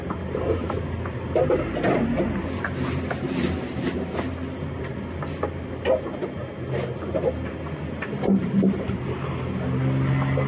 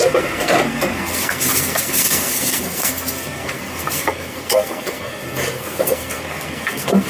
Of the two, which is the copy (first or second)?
second